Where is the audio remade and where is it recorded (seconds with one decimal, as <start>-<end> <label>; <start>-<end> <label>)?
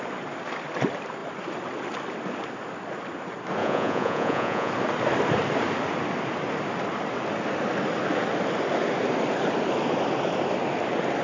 0.0-3.6 recorded; 3.6-4.7 remade; 4.7-11.2 recorded